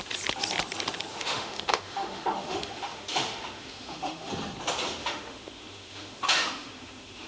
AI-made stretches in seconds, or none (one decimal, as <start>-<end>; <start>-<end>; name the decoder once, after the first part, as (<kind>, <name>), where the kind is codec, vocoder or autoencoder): 1.1-4.3 (autoencoder, DAC-VAE); 5.0-7.3

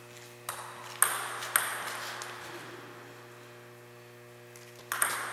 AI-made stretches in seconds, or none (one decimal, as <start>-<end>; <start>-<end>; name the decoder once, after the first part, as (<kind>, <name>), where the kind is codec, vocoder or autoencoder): none

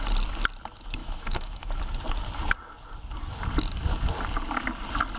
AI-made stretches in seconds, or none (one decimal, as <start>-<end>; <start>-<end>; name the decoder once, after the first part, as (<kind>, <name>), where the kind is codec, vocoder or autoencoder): 1.0-1.8 (autoencoder, DAC-VAE)

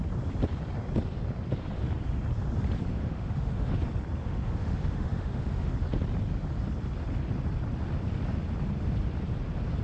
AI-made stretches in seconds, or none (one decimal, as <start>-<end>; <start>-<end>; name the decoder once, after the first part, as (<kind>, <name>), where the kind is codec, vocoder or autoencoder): 3.0-3.8 (autoencoder, DAC-VAE); 4.2-5.7

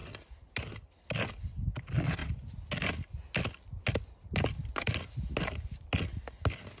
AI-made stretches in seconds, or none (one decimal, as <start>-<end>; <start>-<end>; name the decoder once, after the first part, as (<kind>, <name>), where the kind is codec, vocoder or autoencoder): none

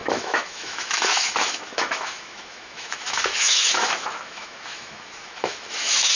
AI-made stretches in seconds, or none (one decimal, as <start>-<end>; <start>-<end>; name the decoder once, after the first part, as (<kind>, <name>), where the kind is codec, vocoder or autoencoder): 0.0-6.1 (autoencoder, DAC-VAE)

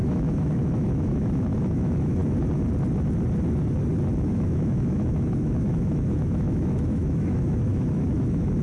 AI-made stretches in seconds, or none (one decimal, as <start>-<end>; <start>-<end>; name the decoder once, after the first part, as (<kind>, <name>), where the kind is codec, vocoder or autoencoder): 0.0-2.2 (autoencoder, DAC-VAE); 4.2-8.6

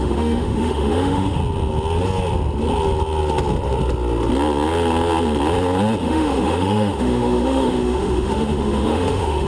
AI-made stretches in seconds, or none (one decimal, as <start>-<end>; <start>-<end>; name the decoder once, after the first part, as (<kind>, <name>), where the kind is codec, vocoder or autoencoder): 0.0-1.4 (autoencoder, DAC-VAE); 6.0-9.5